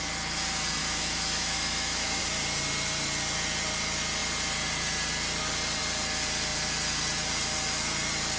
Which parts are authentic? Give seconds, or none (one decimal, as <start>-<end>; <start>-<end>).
0.0-0.8; 2.2-8.4

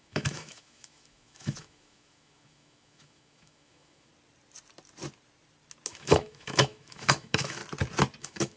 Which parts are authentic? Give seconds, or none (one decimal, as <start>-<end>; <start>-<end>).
4.1-5.9; 7.6-8.2

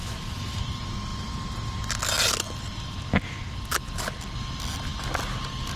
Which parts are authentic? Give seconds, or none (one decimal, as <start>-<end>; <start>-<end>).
0.6-5.8

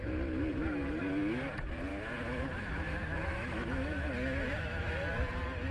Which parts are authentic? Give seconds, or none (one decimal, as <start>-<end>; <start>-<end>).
0.0-0.5; 1.0-1.9; 5.3-5.7

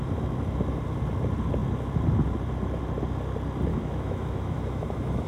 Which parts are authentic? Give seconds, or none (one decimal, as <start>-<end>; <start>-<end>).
0.0-3.7